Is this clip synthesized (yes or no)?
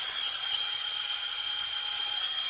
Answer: no